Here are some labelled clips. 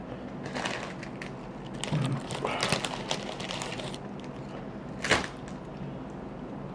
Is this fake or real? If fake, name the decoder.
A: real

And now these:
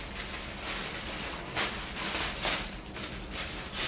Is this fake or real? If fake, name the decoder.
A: real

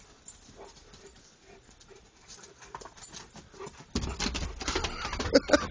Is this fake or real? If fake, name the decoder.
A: real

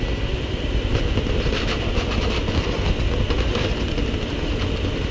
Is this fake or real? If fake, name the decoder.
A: real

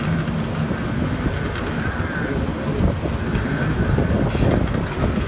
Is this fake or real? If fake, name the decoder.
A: real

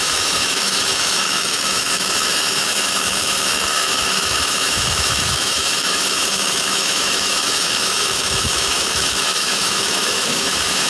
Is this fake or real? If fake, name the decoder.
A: fake, autoencoder, DAC-VAE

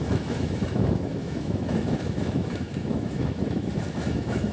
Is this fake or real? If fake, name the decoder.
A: fake, autoencoder, DAC-VAE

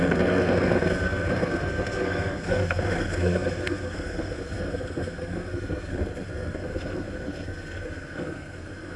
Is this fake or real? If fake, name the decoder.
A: fake, codec, SNAC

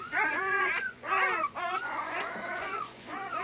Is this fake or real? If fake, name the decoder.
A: fake, vocoder, Vocos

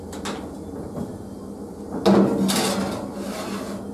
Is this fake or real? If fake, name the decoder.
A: real